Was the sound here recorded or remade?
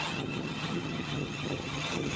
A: remade